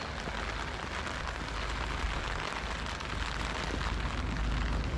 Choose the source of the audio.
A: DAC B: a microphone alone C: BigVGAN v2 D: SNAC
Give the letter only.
B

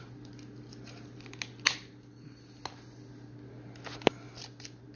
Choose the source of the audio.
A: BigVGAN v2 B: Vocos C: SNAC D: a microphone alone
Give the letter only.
D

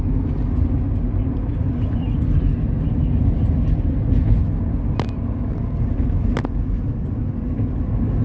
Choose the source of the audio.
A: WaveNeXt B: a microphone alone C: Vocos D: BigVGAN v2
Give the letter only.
B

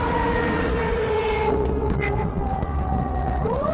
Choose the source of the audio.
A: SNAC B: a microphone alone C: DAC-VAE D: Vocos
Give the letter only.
D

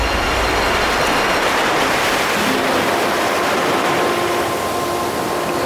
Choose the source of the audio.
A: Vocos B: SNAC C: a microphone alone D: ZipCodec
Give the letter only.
C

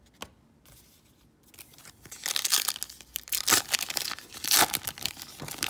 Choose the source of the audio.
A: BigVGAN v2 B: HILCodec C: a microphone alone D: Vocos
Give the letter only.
C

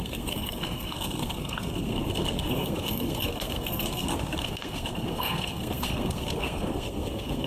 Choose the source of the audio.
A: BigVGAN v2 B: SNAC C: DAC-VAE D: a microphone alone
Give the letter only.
B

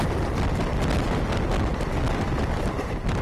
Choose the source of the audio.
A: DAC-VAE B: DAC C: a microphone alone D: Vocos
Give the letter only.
C